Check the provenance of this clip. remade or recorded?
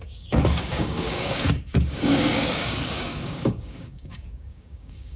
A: remade